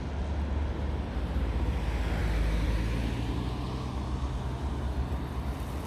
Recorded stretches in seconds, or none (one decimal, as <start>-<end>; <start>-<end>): 0.0-5.9